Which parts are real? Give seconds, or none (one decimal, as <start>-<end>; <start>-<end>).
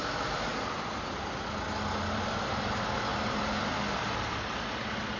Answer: 0.0-3.1; 3.7-5.2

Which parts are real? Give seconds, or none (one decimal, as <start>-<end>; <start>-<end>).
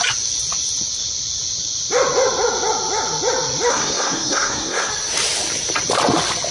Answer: 0.0-3.7; 4.9-6.5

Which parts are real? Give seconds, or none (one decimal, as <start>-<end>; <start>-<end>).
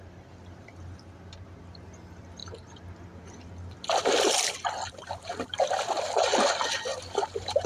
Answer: 0.0-7.7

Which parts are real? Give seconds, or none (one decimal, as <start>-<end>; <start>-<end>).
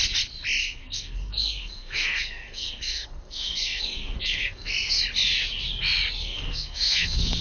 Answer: 0.0-0.6; 5.0-6.2